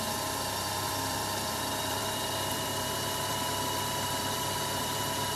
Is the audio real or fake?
fake